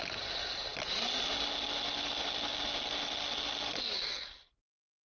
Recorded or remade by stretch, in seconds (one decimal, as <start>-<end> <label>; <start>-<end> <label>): 0.0-5.0 recorded